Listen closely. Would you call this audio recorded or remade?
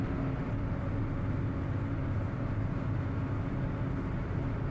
recorded